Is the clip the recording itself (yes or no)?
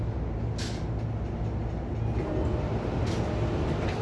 yes